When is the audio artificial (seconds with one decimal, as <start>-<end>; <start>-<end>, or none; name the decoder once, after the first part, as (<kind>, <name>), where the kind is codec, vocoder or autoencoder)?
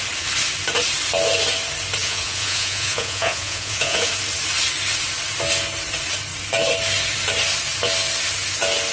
2.0-4.1 (vocoder, Vocos)